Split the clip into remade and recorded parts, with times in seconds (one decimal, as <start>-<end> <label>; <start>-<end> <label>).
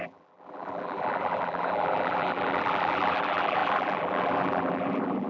0.0-5.3 remade